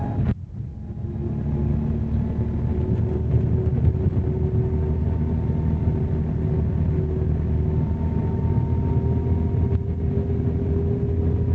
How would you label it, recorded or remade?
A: recorded